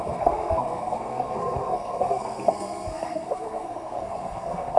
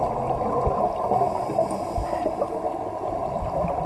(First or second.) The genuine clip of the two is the second